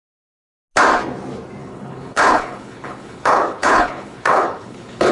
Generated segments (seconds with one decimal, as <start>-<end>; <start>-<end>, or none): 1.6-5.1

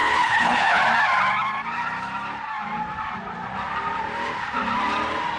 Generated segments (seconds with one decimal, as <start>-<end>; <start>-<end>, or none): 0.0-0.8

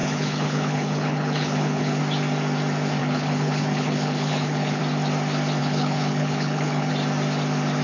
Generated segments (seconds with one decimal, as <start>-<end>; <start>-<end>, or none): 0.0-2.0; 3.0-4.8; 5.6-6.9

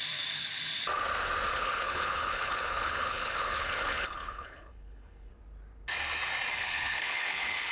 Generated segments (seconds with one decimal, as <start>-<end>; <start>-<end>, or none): 1.5-5.3; 6.5-7.7

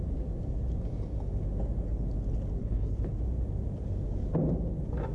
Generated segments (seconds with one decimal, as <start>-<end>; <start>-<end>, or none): 2.6-3.2